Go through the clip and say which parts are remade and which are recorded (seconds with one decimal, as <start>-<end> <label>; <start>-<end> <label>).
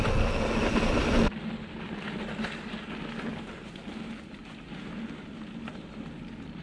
0.0-0.6 recorded; 0.6-1.2 remade; 1.2-3.3 recorded; 3.3-3.8 remade; 3.8-6.6 recorded